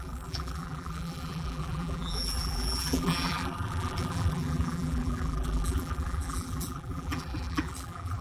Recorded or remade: remade